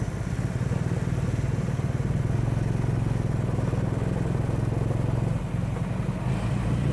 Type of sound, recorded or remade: recorded